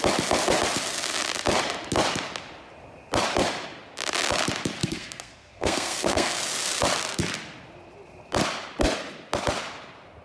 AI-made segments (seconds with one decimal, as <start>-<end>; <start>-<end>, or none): 4.8-6.4